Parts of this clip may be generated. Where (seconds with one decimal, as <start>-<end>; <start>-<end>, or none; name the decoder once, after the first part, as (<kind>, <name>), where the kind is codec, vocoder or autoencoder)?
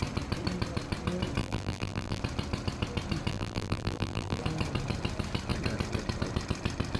1.4-2.2 (vocoder, BigVGAN v2); 3.3-4.4